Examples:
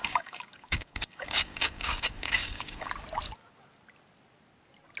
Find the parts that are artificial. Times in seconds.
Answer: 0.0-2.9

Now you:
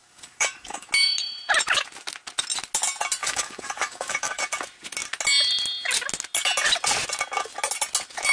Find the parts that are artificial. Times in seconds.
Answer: 0.0-0.9; 3.2-4.4

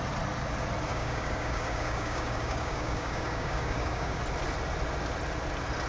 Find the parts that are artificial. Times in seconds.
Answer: 0.9-4.2

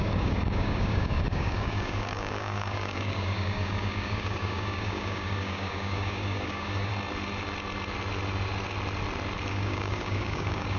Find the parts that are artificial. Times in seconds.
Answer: 0.0-6.9; 9.5-10.8

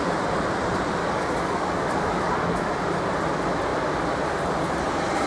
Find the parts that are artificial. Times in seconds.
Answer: 1.0-2.7

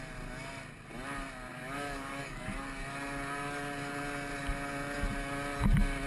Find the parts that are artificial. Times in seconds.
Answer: 1.5-2.6

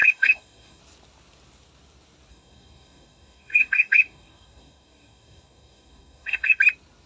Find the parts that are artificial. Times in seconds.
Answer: 0.0-0.8; 2.3-6.6

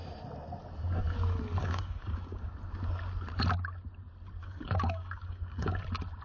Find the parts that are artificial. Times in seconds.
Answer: 1.6-2.5; 4.4-5.8